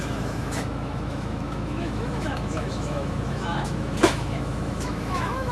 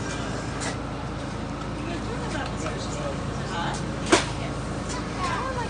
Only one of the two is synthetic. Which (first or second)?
first